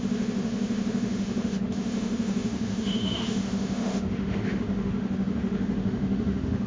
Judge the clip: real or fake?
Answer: fake